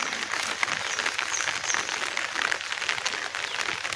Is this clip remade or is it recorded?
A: recorded